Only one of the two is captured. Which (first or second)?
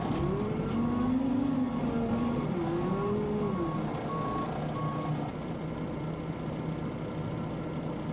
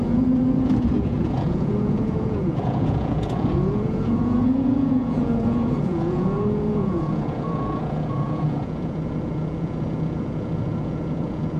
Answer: first